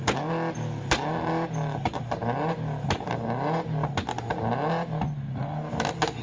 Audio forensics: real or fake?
real